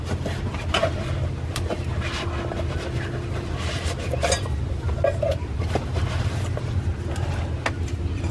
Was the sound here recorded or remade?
recorded